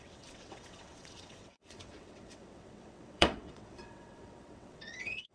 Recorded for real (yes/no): no